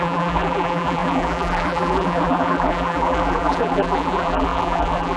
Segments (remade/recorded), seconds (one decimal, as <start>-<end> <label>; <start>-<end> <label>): 0.0-5.2 remade